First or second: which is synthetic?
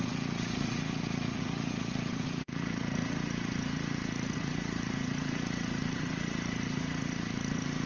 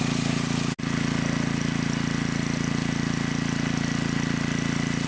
first